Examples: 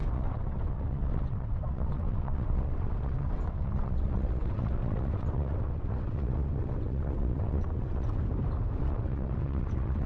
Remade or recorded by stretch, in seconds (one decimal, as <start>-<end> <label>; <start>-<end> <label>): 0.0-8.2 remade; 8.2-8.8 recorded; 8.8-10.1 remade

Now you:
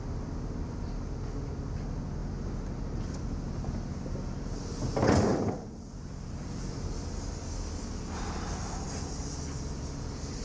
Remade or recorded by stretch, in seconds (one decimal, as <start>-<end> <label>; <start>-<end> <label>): 0.0-5.3 recorded; 5.3-6.7 remade; 6.7-10.4 recorded

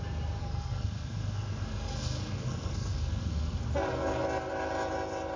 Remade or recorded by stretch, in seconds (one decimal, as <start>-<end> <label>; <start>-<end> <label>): 0.0-0.4 recorded; 0.4-3.6 remade; 3.6-5.4 recorded

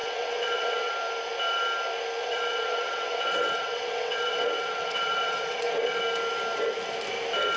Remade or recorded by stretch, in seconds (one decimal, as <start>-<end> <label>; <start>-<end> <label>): 0.0-0.9 remade; 0.9-2.2 recorded; 2.2-6.0 remade; 6.0-7.6 recorded